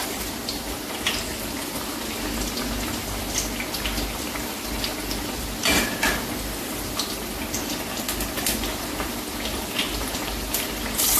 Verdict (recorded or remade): recorded